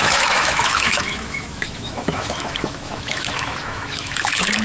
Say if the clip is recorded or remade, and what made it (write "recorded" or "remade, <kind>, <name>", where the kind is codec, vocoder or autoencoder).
remade, autoencoder, DAC-VAE